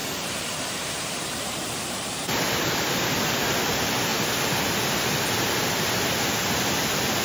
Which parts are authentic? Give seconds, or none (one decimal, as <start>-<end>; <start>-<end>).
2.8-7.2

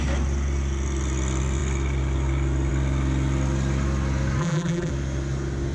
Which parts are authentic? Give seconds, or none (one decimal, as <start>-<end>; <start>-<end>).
0.0-4.4; 4.9-5.7

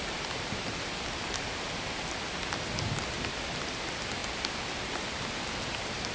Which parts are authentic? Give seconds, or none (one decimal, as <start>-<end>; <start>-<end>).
0.0-6.1